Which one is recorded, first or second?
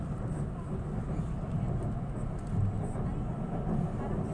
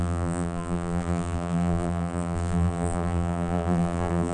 first